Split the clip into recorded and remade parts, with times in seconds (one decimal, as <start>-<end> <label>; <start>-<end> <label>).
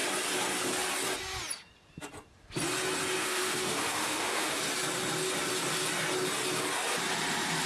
0.0-3.2 recorded; 3.2-4.6 remade; 4.6-7.7 recorded